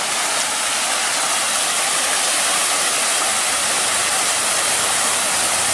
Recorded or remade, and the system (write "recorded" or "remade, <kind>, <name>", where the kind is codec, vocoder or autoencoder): recorded